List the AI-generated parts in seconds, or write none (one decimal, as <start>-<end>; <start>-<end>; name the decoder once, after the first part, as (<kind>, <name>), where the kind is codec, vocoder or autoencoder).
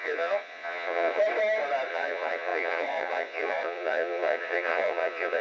0.0-1.2 (vocoder, Vocos); 1.9-5.4